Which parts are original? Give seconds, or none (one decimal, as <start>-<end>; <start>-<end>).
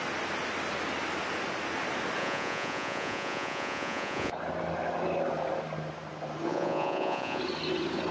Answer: 0.0-2.2; 4.3-6.5; 7.4-8.1